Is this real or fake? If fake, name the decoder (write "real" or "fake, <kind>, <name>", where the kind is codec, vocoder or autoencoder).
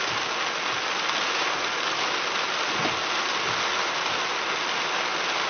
real